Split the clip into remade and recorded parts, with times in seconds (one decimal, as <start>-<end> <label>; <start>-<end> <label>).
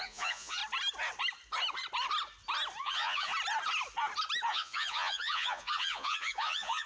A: 0.0-0.6 remade; 0.6-2.8 recorded; 2.8-3.3 remade; 3.3-4.5 recorded; 4.5-6.9 remade